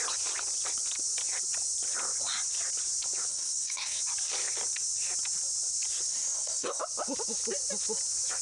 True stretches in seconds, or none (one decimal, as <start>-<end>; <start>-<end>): 0.0-3.3; 4.0-6.1; 6.8-8.4